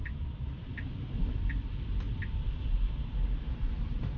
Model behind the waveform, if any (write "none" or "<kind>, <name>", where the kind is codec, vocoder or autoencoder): vocoder, BigVGAN v2